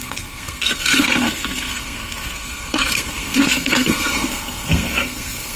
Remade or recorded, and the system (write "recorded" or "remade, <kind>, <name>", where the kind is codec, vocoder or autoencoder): remade, codec, SNAC